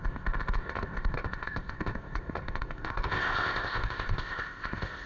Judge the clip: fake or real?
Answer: fake